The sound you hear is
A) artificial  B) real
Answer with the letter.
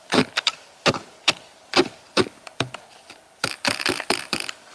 A